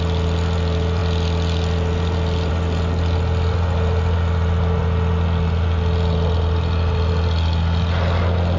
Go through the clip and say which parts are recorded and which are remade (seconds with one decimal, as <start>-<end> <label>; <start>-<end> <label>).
0.0-8.6 recorded